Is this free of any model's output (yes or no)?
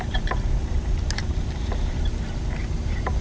no